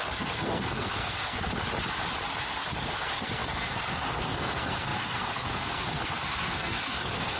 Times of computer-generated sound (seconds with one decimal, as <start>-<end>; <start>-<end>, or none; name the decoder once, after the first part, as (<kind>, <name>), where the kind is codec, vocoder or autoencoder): 0.0-1.5 (codec, SNAC); 2.6-7.4